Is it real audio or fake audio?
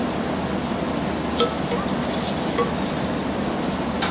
real